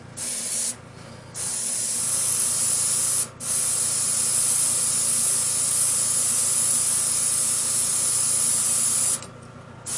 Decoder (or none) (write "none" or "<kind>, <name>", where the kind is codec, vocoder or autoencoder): none